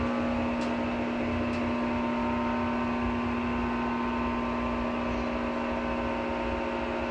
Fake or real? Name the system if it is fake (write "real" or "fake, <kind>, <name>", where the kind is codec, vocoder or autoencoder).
real